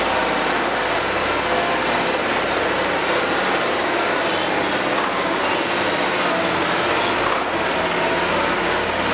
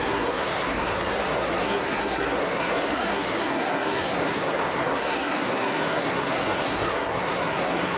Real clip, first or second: first